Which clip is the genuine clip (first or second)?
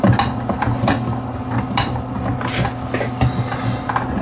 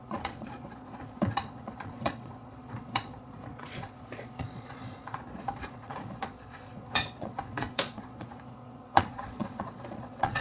first